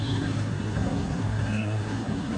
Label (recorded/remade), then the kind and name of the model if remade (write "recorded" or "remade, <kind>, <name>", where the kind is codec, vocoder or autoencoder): remade, codec, SNAC